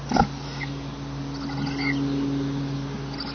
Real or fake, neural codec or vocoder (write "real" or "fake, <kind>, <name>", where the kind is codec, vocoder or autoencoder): real